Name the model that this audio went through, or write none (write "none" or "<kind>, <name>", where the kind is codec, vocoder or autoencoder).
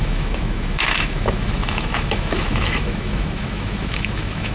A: autoencoder, DAC-VAE